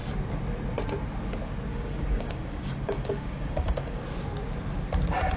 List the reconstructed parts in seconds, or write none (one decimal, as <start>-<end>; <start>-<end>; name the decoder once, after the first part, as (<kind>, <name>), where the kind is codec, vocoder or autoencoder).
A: 1.7-4.0 (codec, DAC)